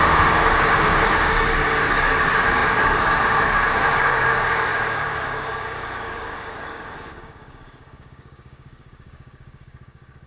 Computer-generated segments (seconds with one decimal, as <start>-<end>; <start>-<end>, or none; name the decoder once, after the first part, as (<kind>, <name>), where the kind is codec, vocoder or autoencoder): 0.0-10.3 (codec, DAC)